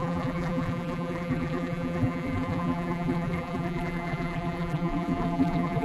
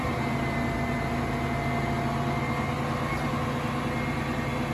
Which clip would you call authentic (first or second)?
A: second